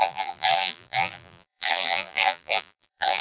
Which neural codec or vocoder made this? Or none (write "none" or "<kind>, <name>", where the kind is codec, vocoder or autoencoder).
vocoder, BigVGAN v2